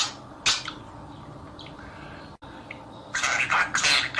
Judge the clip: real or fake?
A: real